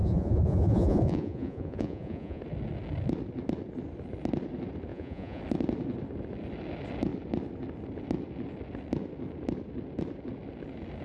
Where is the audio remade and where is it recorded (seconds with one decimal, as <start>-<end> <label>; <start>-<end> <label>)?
0.0-2.4 remade; 2.4-4.9 recorded; 4.9-5.4 remade; 5.4-11.0 recorded